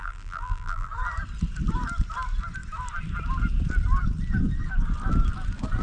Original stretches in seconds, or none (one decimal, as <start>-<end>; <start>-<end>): 0.9-5.8